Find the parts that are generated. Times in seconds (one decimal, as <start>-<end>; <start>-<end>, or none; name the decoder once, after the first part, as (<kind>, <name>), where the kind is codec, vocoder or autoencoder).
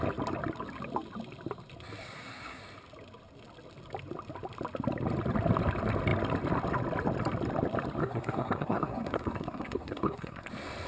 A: 2.0-2.6 (codec, SNAC); 8.0-10.5